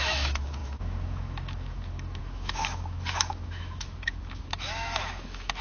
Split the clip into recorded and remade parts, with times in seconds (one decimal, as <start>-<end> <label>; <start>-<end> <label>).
0.0-5.6 remade

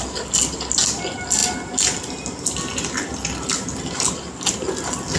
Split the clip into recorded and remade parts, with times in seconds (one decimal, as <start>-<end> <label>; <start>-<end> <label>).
0.0-5.2 recorded

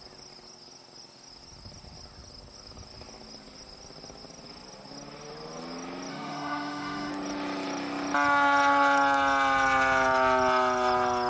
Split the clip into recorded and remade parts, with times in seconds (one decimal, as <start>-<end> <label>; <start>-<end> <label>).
0.0-6.1 recorded; 6.1-7.1 remade; 7.1-11.3 recorded